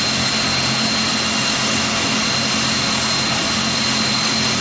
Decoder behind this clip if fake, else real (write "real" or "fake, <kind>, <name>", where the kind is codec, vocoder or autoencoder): real